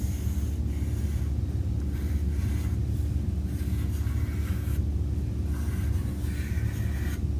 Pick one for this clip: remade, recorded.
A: recorded